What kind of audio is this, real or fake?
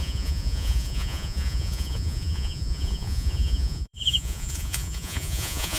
fake